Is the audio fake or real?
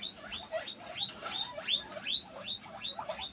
real